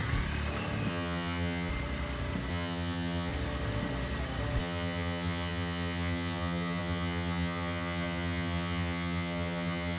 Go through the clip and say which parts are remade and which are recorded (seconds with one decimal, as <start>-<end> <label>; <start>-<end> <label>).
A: 0.0-0.9 recorded; 0.9-1.7 remade; 1.7-2.5 recorded; 2.5-3.3 remade; 3.3-4.6 recorded; 4.6-10.0 remade